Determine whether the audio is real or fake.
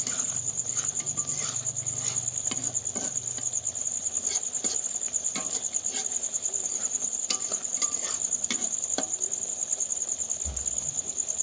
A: real